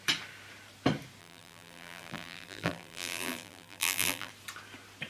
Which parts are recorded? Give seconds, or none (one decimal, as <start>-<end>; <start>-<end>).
0.0-1.2; 4.3-5.1